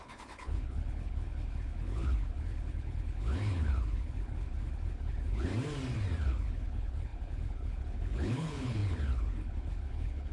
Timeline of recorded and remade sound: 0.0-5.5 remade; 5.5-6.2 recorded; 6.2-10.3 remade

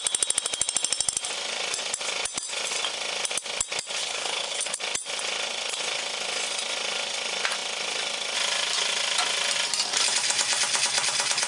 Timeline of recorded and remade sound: 0.0-4.0 recorded; 4.0-4.8 remade; 4.8-11.5 recorded

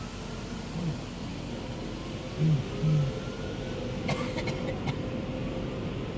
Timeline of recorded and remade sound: 0.0-6.2 recorded

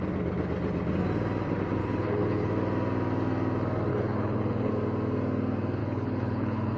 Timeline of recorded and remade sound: 0.0-1.8 recorded; 1.8-2.5 remade; 2.5-3.9 recorded; 3.9-4.7 remade; 4.7-5.8 recorded; 5.8-6.8 remade

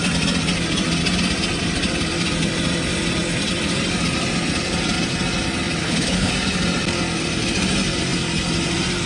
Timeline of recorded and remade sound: 0.0-5.8 recorded; 5.8-6.3 remade; 6.3-9.1 recorded

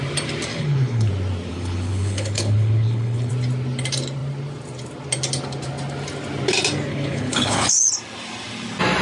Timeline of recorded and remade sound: 0.0-0.5 recorded; 0.5-1.1 remade; 1.1-1.5 recorded; 1.5-3.3 remade; 3.3-6.9 recorded; 6.9-7.9 remade; 7.9-9.0 recorded